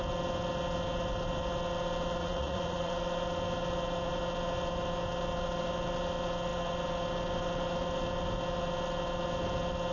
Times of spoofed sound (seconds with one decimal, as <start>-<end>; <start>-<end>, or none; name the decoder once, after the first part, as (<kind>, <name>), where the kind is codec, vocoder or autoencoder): 2.2-2.9 (vocoder, Vocos)